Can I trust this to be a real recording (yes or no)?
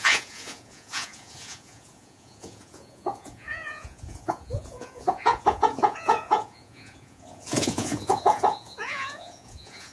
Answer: no